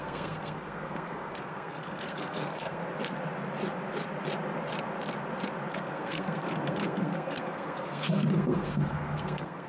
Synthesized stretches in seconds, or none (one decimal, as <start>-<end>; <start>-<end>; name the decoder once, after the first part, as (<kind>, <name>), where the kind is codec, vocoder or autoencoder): 0.0-2.8 (codec, SNAC); 5.7-9.7

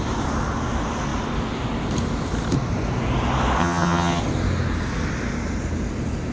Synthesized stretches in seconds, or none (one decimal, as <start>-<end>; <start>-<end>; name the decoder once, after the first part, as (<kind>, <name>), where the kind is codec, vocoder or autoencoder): 3.6-4.2 (vocoder, HiFi-GAN)

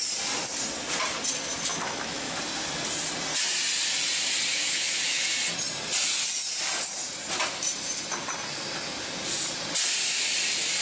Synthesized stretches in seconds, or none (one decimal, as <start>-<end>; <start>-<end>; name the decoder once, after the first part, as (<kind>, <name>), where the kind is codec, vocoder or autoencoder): 1.7-2.4 (autoencoder, DAC-VAE); 4.5-5.3